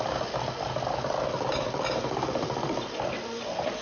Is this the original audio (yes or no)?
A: no